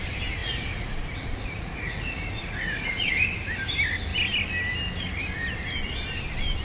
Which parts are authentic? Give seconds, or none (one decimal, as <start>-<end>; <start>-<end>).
0.0-0.4; 3.1-6.6